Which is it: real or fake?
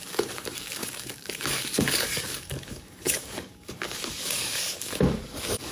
fake